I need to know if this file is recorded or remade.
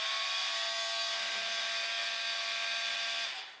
recorded